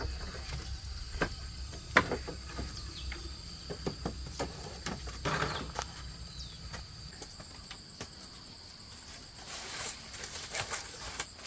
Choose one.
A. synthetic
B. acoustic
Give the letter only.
B